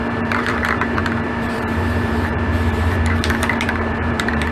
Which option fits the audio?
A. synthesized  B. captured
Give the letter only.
A